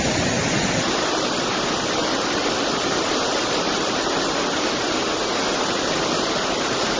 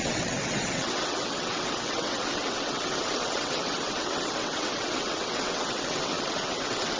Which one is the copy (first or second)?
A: second